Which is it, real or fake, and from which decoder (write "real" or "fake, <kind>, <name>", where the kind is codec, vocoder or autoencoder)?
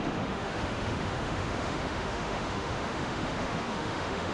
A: fake, autoencoder, DAC-VAE